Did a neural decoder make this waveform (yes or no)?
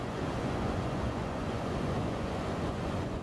yes